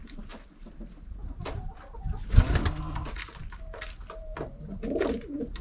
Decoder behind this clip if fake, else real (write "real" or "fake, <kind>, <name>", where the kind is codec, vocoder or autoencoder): real